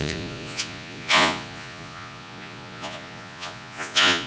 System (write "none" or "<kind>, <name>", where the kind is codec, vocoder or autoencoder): vocoder, Vocos